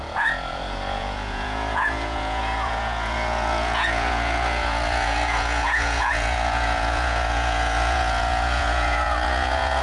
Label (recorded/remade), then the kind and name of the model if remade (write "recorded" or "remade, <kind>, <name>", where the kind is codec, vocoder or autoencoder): remade, vocoder, Vocos